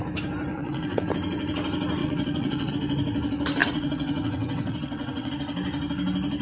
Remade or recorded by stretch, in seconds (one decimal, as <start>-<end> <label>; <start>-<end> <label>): 0.0-0.5 recorded; 0.5-1.1 remade; 1.1-2.0 recorded; 2.0-2.7 remade; 2.7-3.6 recorded; 3.6-5.3 remade; 5.3-6.4 recorded